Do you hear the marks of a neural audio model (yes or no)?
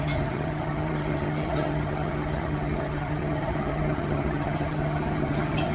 yes